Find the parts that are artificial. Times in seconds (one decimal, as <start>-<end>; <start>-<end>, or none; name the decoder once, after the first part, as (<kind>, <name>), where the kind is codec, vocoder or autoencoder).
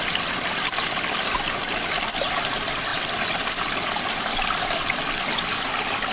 none